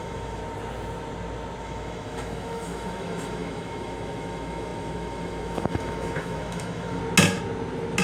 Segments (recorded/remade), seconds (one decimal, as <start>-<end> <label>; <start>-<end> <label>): 0.0-0.4 remade; 0.4-1.6 recorded; 1.6-7.0 remade; 7.0-8.0 recorded